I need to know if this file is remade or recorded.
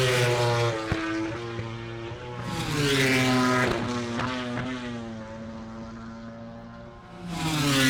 recorded